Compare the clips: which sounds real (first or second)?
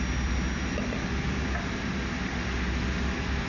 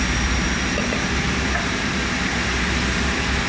first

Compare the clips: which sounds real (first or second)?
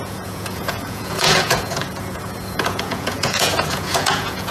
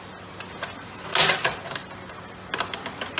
second